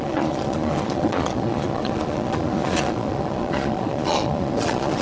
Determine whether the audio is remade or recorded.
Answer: remade